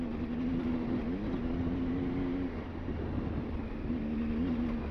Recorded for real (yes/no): yes